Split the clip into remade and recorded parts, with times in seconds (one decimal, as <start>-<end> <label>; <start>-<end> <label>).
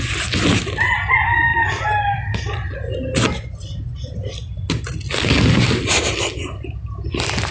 0.0-7.5 recorded